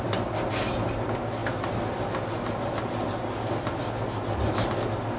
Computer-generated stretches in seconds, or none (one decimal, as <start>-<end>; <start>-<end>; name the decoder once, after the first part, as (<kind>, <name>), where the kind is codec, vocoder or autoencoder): none